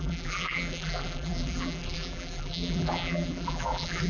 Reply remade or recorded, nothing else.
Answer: remade